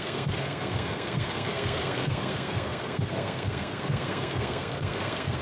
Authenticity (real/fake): fake